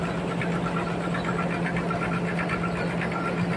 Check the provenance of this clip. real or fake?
real